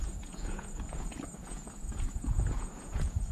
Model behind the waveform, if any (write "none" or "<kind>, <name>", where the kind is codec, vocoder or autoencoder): vocoder, Vocos